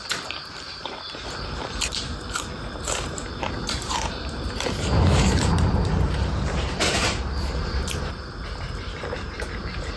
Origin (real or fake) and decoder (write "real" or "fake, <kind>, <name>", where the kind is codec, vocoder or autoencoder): fake, vocoder, BigVGAN v2